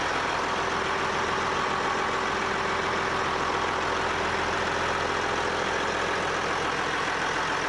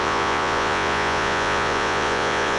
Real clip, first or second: first